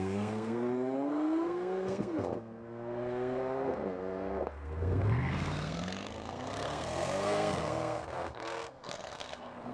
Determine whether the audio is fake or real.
fake